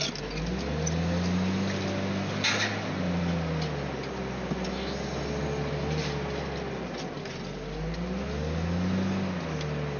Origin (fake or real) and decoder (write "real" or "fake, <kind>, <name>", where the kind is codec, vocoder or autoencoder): real